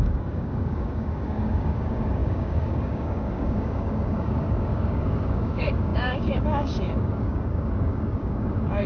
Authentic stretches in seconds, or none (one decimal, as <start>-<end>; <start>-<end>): none